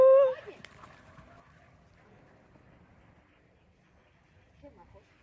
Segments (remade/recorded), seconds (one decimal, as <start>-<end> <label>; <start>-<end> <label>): 0.0-5.2 recorded